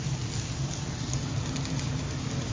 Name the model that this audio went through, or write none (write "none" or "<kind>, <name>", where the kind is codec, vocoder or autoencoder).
none